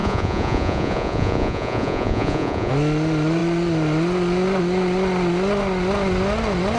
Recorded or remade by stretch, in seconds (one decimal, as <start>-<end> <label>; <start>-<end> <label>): 0.0-2.7 remade; 2.7-6.8 recorded